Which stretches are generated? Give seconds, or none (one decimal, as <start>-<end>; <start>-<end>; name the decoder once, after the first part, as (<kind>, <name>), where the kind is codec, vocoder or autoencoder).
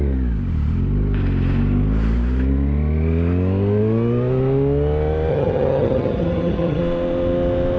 5.3-6.8 (vocoder, HiFi-GAN)